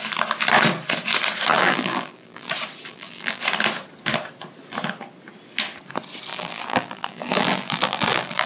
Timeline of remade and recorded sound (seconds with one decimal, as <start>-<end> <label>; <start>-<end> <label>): 0.0-1.5 recorded; 1.5-2.5 remade; 2.5-2.9 recorded; 2.9-3.4 remade; 3.4-6.3 recorded; 6.3-8.5 remade